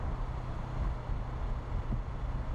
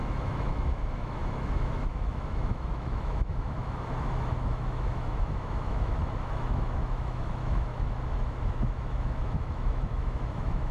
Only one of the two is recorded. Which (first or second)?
first